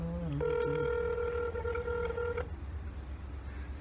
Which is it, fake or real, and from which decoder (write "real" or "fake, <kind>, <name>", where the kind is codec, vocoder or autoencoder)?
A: real